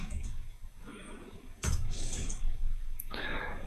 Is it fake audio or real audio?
fake